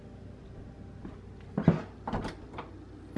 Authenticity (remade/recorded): recorded